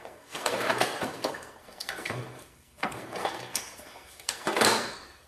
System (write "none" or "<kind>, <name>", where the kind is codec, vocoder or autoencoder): codec, SNAC